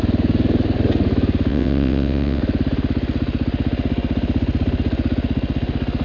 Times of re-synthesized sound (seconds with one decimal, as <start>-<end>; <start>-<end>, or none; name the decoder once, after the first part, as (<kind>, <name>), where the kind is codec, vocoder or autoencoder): 1.5-2.4 (vocoder, WaveNeXt)